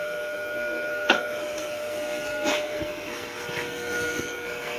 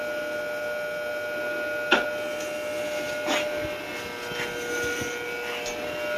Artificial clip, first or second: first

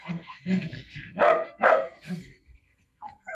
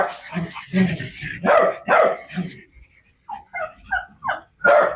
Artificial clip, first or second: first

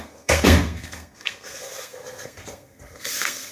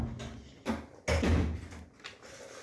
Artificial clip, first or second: first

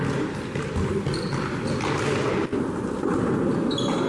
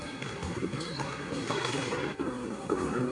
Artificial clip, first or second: second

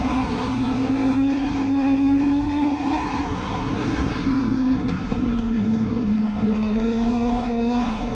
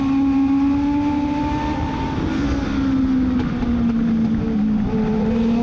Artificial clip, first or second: first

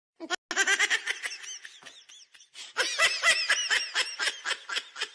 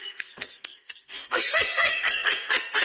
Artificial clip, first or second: second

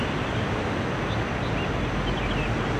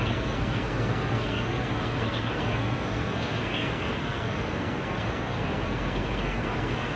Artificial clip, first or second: second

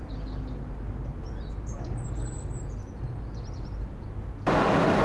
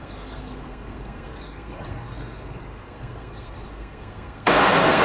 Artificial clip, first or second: second